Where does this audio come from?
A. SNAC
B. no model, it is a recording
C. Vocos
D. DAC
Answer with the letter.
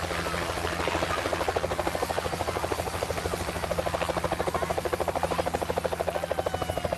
B